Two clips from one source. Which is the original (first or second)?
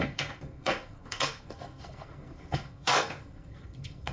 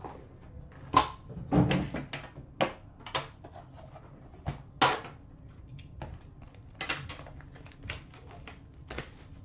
second